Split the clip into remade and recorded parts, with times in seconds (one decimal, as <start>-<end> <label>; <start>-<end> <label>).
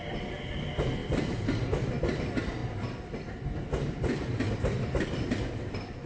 0.0-6.1 recorded